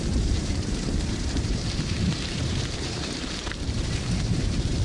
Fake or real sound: fake